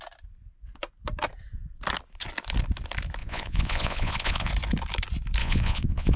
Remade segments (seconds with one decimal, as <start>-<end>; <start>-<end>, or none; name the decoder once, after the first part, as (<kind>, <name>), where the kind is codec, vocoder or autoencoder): 3.2-4.5 (vocoder, Vocos); 5.4-6.2

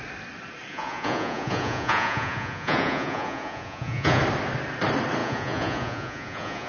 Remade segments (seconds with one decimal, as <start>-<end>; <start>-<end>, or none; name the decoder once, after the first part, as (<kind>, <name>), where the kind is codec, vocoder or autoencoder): 0.7-4.2 (vocoder, Vocos); 5.2-6.7

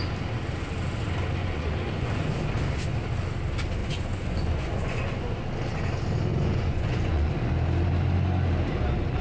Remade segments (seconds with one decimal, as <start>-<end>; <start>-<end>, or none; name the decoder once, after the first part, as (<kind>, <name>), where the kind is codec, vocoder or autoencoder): 1.4-2.3 (vocoder, Vocos); 3.8-5.4; 6.3-7.3

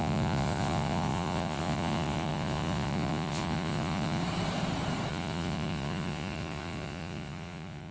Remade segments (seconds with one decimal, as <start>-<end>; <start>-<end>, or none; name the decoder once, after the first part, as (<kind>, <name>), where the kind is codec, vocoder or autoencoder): 0.0-4.2 (vocoder, Vocos); 5.1-7.9

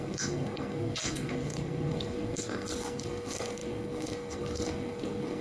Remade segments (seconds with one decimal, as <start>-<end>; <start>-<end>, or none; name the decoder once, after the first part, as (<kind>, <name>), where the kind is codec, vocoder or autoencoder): 0.0-5.4 (codec, SNAC)

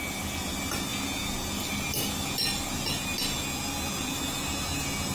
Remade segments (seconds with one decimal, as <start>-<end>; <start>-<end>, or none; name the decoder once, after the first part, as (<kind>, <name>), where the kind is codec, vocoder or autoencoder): none

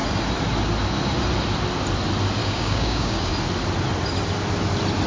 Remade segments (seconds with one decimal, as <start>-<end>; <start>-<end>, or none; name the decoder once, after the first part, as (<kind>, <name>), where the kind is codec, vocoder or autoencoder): 2.4-3.3 (codec, DAC)

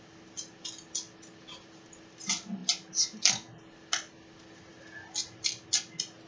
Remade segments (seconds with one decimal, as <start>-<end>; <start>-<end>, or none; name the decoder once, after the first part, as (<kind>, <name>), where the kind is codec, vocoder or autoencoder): none